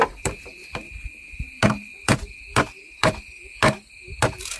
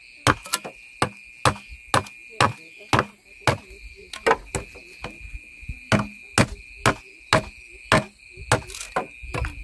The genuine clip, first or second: second